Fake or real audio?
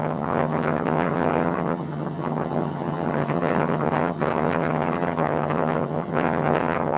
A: fake